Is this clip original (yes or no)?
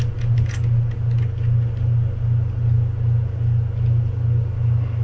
yes